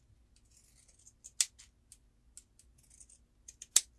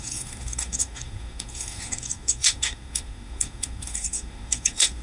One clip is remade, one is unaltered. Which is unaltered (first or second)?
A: first